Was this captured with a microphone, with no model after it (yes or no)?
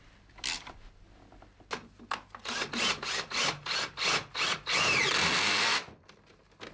yes